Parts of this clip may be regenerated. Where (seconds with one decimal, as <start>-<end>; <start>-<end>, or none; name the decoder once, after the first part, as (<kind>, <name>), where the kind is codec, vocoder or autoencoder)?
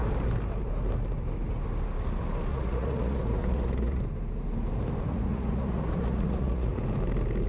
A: 2.5-4.0 (vocoder, Vocos); 5.1-6.8